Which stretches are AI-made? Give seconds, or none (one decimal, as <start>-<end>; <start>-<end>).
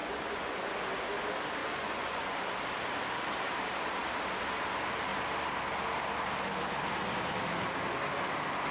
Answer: 0.0-0.7; 1.6-2.4